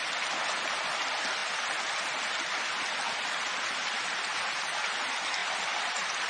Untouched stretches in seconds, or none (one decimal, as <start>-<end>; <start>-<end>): 0.0-1.4; 2.0-3.8; 4.7-5.4